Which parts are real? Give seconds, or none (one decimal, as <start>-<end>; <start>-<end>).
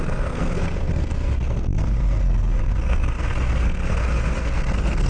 none